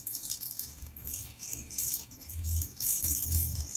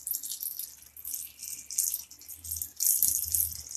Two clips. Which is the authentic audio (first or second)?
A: second